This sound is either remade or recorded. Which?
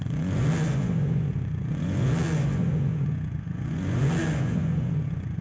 remade